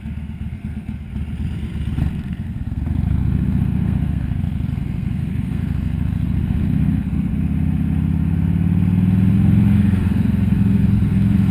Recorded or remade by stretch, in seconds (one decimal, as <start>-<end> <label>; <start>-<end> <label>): 0.0-1.1 remade; 1.1-2.1 recorded; 2.1-7.3 remade; 7.3-9.3 recorded; 9.3-11.5 remade